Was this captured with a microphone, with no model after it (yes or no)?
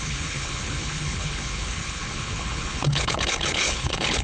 no